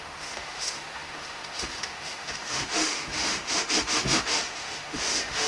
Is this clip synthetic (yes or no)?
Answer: yes